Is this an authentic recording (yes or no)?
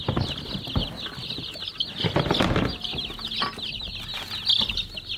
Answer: yes